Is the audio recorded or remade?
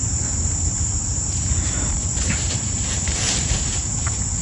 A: remade